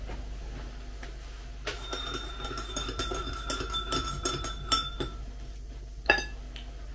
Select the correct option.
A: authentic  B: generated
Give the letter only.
A